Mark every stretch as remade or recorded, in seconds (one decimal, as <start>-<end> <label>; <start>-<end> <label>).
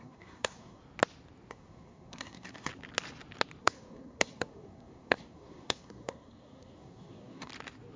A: 0.0-0.8 remade; 0.8-1.5 recorded; 1.5-2.7 remade; 2.7-3.6 recorded; 3.6-7.5 remade; 7.5-8.0 recorded